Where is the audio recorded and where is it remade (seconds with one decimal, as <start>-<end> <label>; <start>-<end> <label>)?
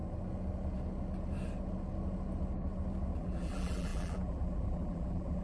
0.0-3.2 recorded; 3.2-5.4 remade